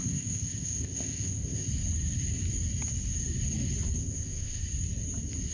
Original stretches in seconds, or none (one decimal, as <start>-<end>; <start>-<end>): 1.7-4.0; 4.6-5.5